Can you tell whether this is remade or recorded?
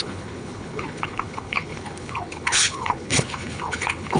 remade